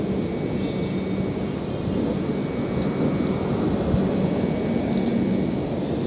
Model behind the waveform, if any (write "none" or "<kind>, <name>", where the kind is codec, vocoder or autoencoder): none